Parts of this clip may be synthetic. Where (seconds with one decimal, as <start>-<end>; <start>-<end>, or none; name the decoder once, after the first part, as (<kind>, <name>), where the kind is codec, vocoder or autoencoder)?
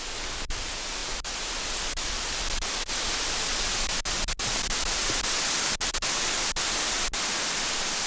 none